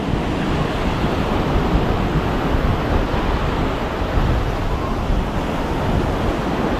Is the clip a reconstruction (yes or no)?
no